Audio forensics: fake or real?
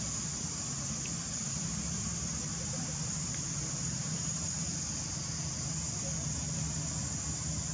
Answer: real